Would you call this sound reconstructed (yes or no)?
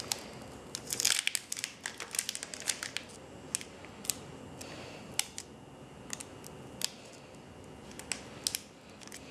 no